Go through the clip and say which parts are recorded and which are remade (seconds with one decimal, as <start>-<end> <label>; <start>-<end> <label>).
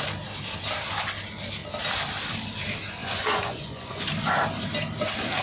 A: 0.0-3.0 recorded; 3.0-4.0 remade; 4.0-5.4 recorded